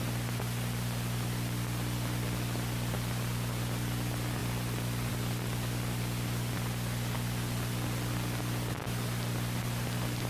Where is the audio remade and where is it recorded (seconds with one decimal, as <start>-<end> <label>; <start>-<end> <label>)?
0.0-10.3 recorded